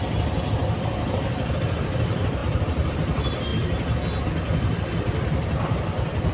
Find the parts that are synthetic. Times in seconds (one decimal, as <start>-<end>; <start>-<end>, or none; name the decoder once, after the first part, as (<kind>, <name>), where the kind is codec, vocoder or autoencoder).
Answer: 0.0-2.4 (vocoder, BigVGAN v2); 2.9-3.5; 4.2-6.3

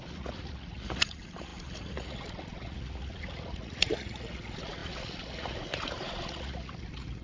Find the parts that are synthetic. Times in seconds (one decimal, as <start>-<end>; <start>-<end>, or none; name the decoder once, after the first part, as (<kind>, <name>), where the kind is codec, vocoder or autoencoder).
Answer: 0.0-7.2 (vocoder, Vocos)

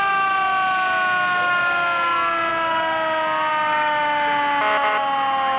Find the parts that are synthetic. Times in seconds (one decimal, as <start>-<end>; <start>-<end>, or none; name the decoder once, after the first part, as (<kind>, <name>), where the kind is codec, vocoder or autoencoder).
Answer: none

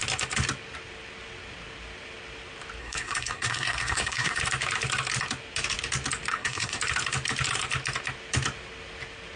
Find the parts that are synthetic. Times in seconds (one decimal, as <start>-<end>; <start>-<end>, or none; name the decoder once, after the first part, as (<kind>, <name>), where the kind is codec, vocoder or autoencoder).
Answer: 2.8-4.4 (codec, SNAC); 6.3-6.8

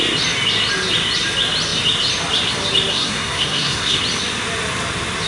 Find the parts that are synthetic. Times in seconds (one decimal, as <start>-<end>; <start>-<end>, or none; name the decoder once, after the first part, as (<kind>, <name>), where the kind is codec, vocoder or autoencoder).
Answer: 2.9-4.0 (codec, SNAC)